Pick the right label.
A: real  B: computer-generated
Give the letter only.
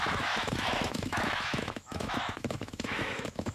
B